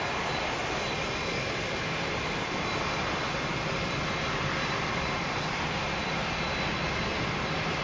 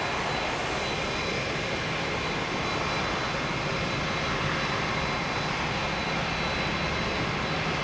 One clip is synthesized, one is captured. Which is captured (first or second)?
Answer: second